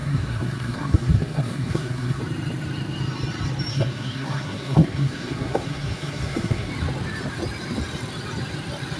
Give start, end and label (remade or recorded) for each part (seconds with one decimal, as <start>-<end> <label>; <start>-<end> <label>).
0.0-2.2 remade; 2.2-3.7 recorded; 3.7-6.7 remade; 6.7-9.0 recorded